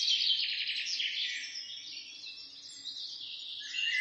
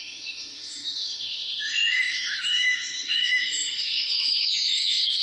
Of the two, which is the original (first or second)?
first